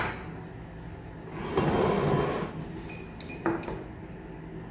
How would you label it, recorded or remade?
recorded